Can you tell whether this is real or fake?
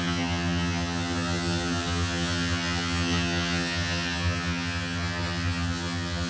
fake